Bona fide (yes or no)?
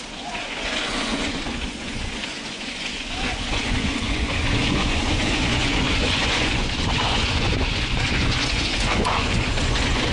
no